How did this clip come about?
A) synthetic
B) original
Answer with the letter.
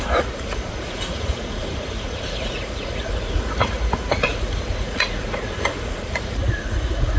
A